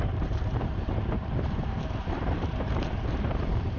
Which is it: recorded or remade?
remade